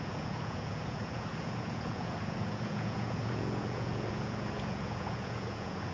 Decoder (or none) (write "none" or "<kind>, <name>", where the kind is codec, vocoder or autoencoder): vocoder, Vocos